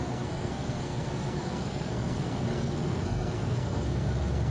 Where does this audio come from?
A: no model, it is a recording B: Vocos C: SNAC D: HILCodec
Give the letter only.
C